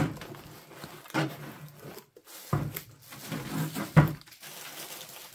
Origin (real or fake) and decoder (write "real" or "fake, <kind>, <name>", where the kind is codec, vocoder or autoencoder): real